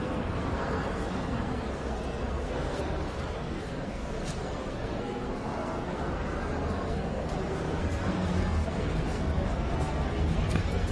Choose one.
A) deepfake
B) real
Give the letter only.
A